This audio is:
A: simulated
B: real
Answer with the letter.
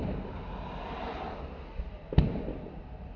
B